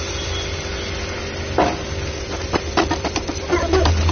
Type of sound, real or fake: real